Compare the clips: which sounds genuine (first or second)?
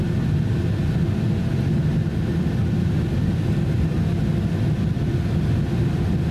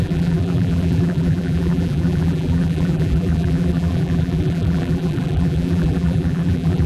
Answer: first